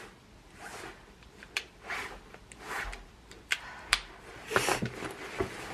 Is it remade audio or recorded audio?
recorded